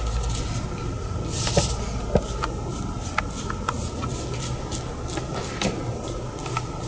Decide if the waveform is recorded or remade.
recorded